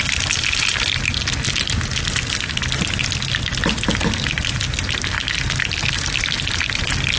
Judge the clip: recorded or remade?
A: recorded